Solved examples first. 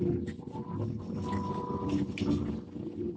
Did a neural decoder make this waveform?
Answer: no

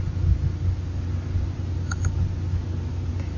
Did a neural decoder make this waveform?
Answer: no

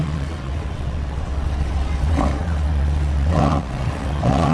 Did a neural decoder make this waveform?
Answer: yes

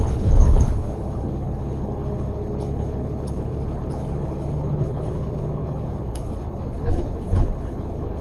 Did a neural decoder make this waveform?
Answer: yes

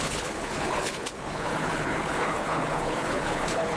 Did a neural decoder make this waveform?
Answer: yes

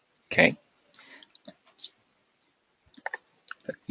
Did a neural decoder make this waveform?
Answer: no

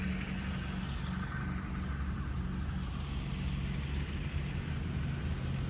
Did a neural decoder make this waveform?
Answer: no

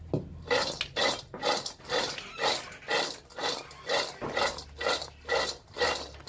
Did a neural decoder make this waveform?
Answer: no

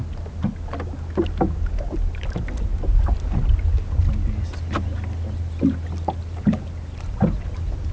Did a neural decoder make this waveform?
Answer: no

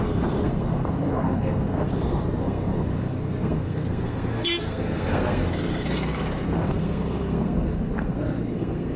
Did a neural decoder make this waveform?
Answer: yes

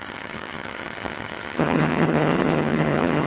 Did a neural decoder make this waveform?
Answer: yes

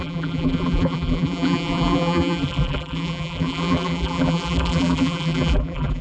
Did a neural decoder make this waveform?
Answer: yes